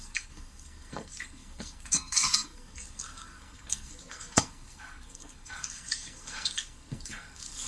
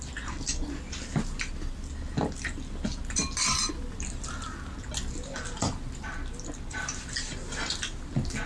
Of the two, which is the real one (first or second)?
second